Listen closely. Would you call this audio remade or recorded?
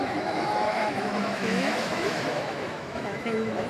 remade